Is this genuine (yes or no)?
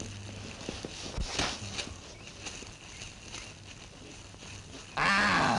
yes